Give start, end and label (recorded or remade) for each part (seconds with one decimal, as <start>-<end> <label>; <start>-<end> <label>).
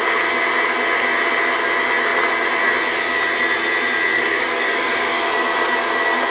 0.0-4.1 recorded; 4.1-5.2 remade; 5.2-6.3 recorded